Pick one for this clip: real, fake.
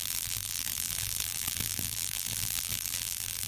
fake